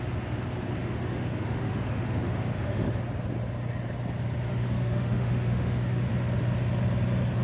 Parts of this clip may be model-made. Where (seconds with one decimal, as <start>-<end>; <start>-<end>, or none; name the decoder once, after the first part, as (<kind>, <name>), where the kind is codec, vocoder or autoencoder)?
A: 0.8-3.0 (autoencoder, DAC-VAE); 4.5-6.1